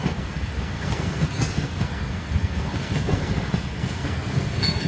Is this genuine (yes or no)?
no